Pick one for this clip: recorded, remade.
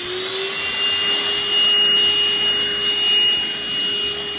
recorded